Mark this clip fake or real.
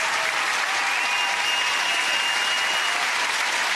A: real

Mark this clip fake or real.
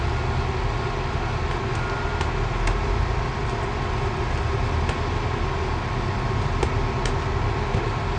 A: real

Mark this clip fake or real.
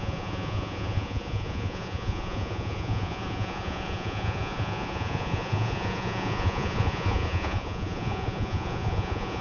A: fake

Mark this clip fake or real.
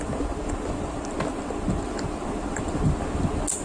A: real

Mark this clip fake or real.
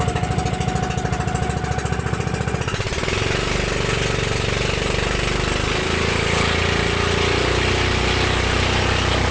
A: real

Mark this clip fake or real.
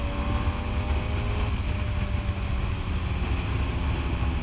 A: real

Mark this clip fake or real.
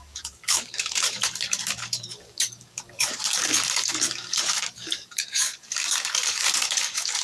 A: fake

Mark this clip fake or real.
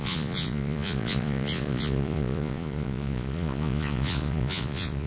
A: fake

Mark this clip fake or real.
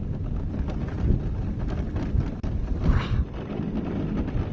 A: real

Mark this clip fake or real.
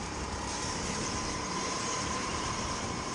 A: fake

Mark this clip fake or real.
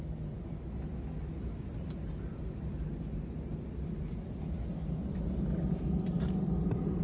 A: real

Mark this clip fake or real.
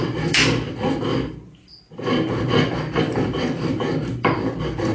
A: real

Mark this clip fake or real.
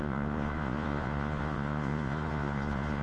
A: fake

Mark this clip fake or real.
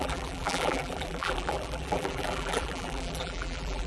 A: fake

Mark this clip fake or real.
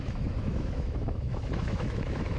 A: fake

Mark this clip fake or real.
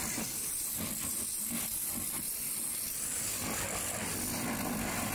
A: real